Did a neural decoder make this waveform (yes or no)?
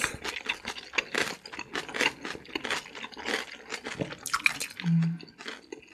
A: no